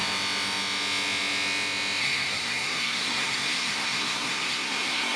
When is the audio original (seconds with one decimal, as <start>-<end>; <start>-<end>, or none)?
0.0-2.0